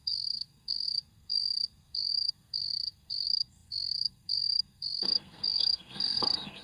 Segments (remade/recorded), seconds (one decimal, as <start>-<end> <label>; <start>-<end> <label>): 0.0-6.6 remade